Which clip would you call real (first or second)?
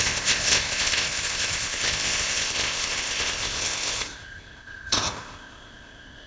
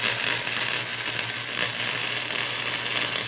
second